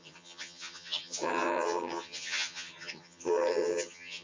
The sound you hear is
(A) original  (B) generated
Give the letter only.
B